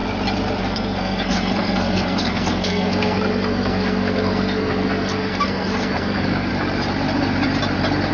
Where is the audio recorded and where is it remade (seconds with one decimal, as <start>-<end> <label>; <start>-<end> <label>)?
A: 0.0-0.6 recorded; 0.6-6.5 remade; 6.5-8.1 recorded